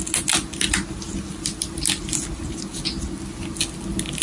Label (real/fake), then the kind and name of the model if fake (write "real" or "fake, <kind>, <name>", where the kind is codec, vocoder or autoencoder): real